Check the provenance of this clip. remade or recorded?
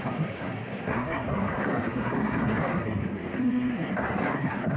remade